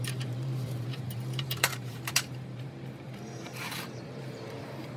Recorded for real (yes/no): no